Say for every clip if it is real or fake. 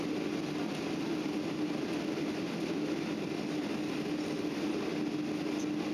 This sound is real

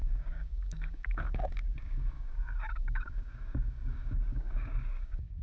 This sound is fake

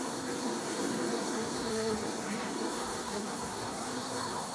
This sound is fake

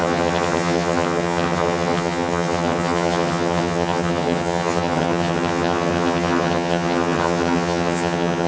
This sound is fake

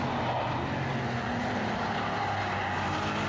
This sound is real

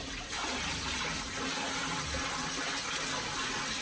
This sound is real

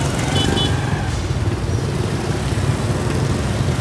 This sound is real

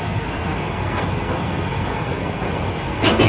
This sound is fake